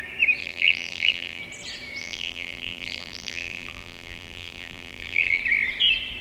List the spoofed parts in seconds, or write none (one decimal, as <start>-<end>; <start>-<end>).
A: 0.4-1.4; 2.0-5.4